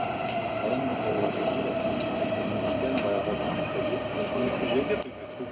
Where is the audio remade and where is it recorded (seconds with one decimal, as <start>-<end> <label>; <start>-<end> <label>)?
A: 0.0-0.9 recorded; 0.9-2.5 remade; 2.5-5.5 recorded